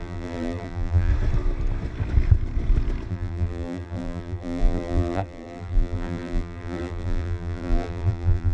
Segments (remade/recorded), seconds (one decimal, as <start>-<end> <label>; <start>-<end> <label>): 0.0-1.1 remade; 1.1-3.1 recorded; 3.1-8.5 remade